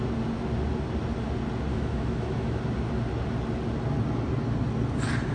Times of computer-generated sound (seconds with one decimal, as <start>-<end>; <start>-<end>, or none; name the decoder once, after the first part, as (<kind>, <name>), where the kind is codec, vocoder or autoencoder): 1.7-2.6 (autoencoder, DAC-VAE)